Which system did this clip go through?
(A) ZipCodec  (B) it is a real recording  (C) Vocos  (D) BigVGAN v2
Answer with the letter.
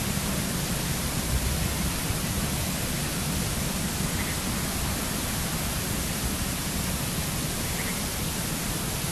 D